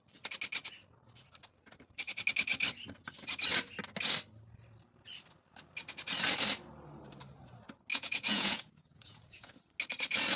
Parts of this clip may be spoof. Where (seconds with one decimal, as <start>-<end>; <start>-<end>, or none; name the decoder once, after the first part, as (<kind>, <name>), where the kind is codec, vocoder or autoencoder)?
7.9-9.6 (vocoder, Vocos)